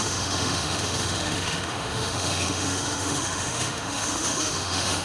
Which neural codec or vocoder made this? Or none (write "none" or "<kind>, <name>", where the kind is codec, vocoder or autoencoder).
autoencoder, DAC-VAE